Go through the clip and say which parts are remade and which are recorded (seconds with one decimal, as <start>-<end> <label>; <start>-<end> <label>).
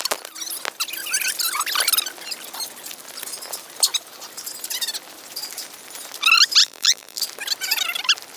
0.0-6.6 recorded; 6.6-7.2 remade; 7.2-8.4 recorded